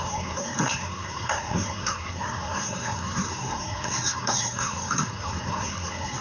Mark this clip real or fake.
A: fake